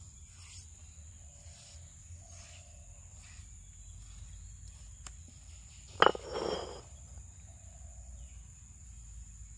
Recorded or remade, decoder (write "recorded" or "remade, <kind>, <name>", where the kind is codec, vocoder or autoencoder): recorded